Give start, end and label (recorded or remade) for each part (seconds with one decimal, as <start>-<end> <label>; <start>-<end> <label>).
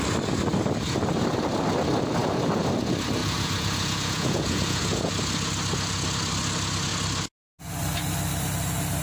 0.0-3.2 recorded; 3.2-5.1 remade; 5.1-9.0 recorded